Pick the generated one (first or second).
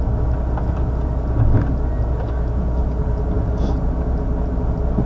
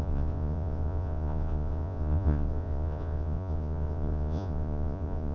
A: second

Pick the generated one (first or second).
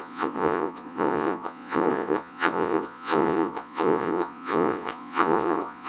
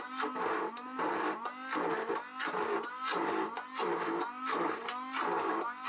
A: first